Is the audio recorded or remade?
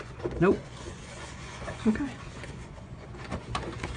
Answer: remade